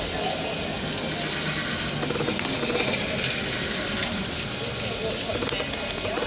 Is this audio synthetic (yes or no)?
no